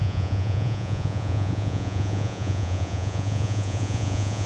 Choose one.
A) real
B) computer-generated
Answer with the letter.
B